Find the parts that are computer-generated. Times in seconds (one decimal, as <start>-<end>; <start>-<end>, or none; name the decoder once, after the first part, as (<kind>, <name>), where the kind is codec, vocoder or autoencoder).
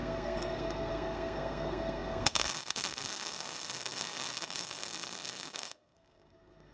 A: 0.0-6.7 (codec, SNAC)